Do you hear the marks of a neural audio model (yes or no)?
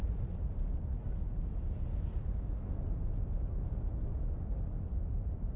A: no